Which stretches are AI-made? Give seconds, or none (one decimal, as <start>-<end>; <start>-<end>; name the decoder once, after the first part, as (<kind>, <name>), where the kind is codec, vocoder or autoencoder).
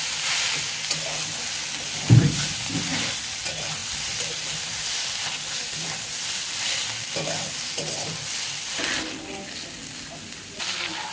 3.8-7.5 (vocoder, BigVGAN v2)